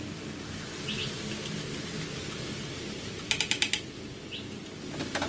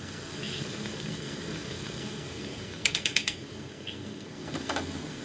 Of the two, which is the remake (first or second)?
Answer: second